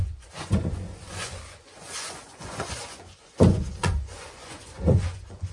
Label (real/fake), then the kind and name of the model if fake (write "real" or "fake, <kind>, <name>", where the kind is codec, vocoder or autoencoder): fake, vocoder, Vocos